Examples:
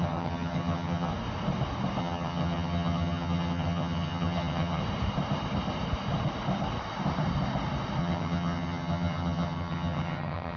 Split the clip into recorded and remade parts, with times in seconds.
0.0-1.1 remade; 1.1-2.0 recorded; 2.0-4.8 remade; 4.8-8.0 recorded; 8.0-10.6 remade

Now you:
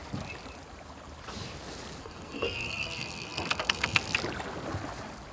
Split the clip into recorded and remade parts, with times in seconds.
0.0-2.0 recorded; 2.0-4.0 remade; 4.0-5.3 recorded